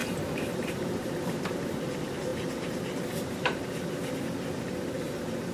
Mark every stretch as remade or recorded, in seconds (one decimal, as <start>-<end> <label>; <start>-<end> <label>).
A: 0.0-1.9 remade; 1.9-2.3 recorded; 2.3-4.2 remade; 4.2-5.5 recorded